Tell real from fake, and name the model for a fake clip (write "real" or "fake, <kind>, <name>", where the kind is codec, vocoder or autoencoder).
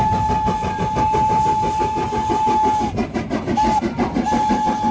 real